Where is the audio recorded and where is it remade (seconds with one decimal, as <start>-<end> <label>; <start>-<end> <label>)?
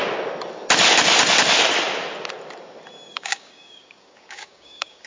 0.0-3.1 recorded; 3.1-5.1 remade